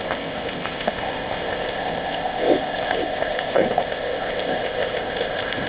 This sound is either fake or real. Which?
fake